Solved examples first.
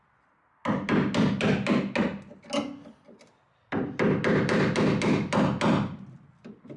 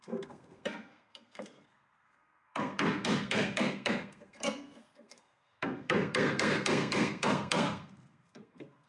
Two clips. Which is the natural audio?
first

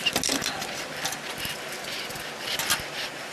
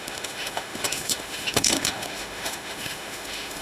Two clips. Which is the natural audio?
first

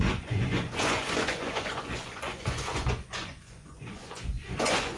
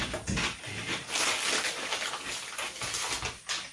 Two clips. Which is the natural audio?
second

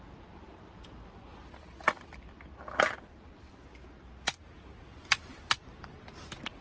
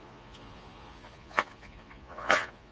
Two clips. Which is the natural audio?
first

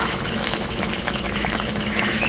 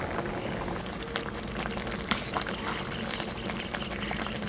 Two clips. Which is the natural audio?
second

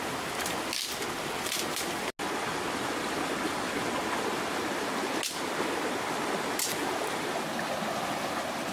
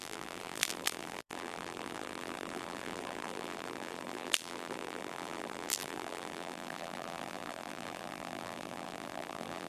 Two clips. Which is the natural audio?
first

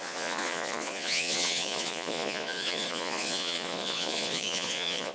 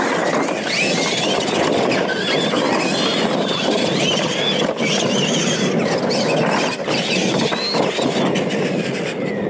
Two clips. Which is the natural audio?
second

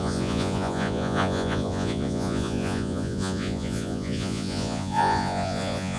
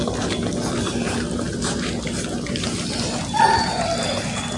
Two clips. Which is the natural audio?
second